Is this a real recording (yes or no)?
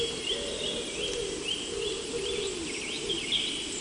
yes